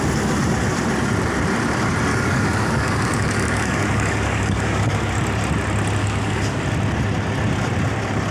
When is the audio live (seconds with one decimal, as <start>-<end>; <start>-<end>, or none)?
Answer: 0.0-2.1; 5.1-6.0; 6.6-8.3